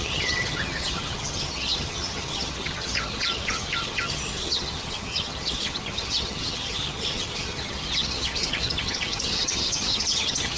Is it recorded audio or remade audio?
remade